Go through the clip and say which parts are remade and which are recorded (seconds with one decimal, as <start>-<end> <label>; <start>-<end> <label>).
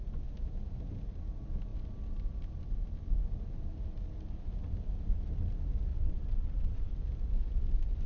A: 0.0-5.9 recorded; 5.9-6.9 remade; 6.9-8.1 recorded